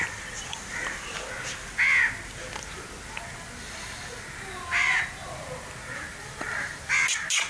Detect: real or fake real